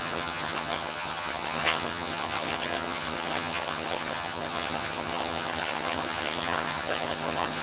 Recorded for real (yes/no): no